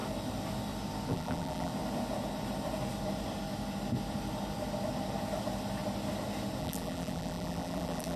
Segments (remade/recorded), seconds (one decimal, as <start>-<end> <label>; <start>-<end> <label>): 0.0-1.1 recorded; 1.1-1.7 remade; 1.7-6.6 recorded; 6.6-8.2 remade